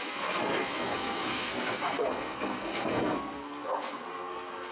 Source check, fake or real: fake